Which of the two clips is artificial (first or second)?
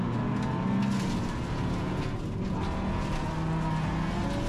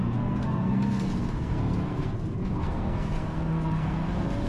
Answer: second